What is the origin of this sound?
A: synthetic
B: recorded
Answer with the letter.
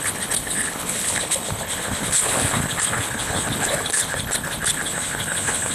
A